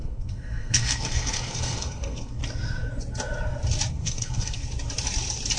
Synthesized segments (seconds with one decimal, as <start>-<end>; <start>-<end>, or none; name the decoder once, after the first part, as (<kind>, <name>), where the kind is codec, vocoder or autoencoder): 0.0-2.4 (codec, SNAC); 3.9-4.6